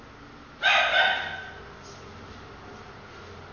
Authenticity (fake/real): real